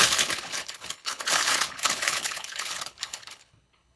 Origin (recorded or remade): remade